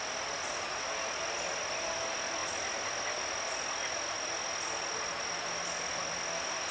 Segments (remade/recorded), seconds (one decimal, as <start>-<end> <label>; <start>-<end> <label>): 0.0-6.7 recorded